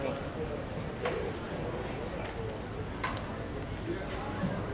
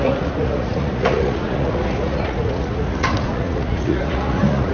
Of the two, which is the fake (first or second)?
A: second